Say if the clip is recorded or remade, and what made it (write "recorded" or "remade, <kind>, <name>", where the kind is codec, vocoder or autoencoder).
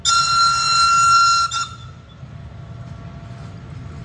recorded